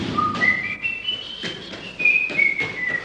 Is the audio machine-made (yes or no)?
yes